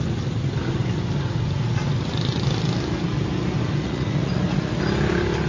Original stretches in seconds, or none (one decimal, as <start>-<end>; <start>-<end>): 0.0-3.8; 4.8-5.5